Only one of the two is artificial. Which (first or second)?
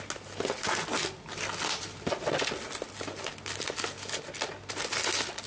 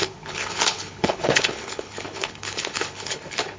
second